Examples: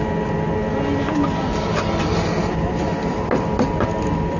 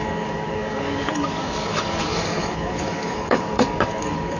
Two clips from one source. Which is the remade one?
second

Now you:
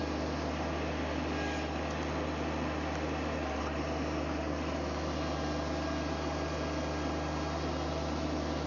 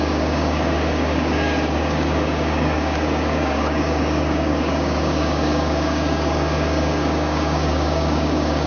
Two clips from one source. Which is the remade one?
second